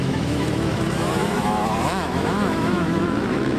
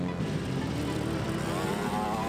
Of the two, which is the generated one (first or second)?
first